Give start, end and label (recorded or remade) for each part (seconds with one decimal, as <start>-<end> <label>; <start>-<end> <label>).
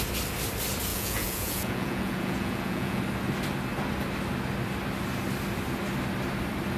0.0-0.9 recorded; 0.9-3.0 remade; 3.0-6.8 recorded